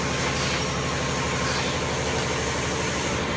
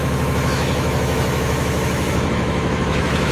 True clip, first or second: first